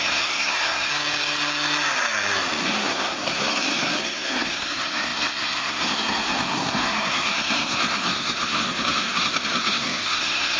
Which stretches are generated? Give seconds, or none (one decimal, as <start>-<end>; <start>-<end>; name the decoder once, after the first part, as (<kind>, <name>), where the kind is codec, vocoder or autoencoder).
0.0-0.9 (codec, SNAC); 2.6-10.6